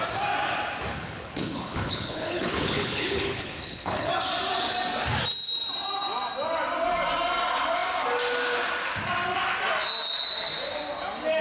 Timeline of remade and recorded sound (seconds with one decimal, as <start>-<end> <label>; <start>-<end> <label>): 0.0-0.9 recorded; 0.9-4.1 remade; 4.1-11.4 recorded